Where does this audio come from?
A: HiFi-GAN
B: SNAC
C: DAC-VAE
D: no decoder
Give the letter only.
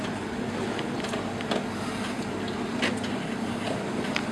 D